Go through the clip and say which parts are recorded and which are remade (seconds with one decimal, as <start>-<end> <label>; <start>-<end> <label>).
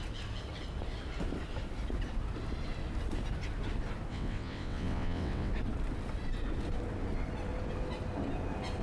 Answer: 0.0-4.1 recorded; 4.1-5.5 remade; 5.5-8.8 recorded